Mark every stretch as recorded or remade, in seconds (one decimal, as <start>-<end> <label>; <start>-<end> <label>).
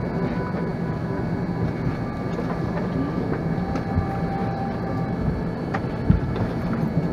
0.0-4.4 recorded; 4.4-5.9 remade; 5.9-7.1 recorded